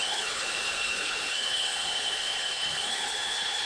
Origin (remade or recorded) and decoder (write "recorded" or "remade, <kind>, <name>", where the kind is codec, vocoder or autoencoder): remade, codec, HILCodec